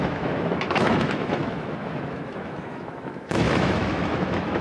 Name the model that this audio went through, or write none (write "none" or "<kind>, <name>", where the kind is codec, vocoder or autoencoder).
autoencoder, DAC-VAE